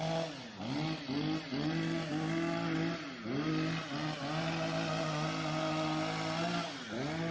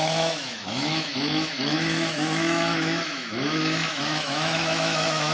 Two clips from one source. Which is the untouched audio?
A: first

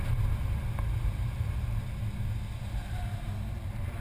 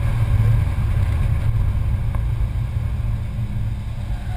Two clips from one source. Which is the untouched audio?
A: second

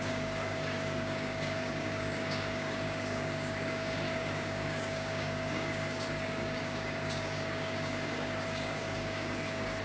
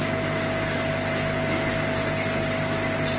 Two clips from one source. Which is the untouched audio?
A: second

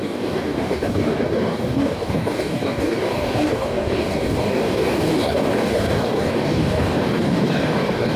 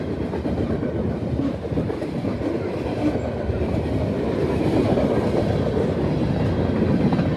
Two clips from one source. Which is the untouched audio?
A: second